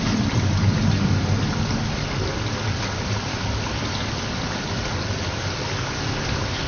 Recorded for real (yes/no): yes